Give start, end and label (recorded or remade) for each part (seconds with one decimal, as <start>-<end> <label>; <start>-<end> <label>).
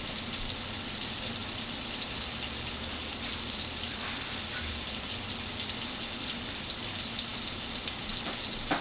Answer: 0.0-8.8 recorded